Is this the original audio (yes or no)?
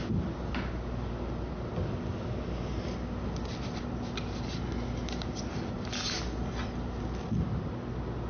yes